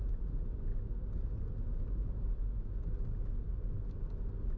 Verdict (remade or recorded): recorded